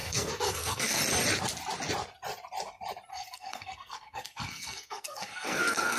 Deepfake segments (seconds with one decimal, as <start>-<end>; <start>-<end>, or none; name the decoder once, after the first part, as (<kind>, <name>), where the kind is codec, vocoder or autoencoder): 0.0-1.0 (codec, SNAC); 3.1-6.0